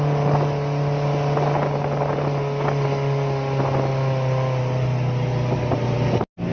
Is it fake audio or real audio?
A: real